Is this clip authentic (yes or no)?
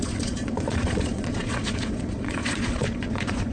no